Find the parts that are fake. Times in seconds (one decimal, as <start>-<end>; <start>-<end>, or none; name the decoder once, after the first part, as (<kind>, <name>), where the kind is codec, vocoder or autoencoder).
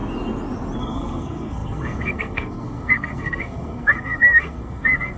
0.8-5.2 (codec, SNAC)